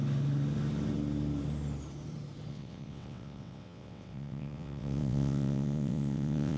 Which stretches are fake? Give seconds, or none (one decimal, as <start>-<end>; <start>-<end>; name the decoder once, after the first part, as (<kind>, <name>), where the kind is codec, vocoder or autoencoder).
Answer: 2.5-6.6 (vocoder, WaveNeXt)